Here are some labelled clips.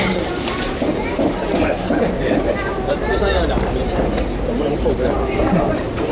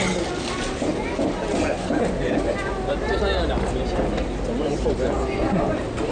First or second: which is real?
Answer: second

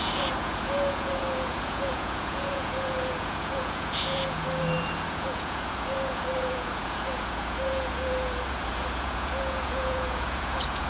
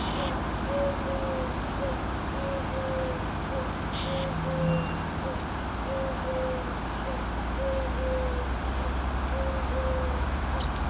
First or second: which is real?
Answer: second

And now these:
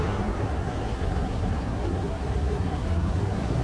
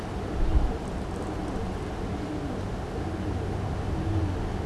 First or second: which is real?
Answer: second